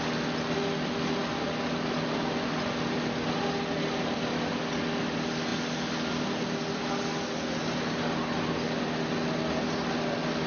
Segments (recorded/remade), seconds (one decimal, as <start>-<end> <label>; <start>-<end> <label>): 0.0-10.5 recorded